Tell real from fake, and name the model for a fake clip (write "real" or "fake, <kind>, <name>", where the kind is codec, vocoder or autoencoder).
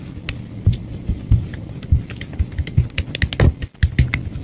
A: real